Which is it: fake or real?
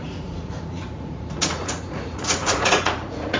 fake